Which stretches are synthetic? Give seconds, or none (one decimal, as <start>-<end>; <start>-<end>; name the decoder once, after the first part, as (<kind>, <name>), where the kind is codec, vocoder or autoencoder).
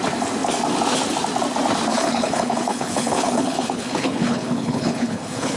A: 1.9-5.6 (codec, HILCodec)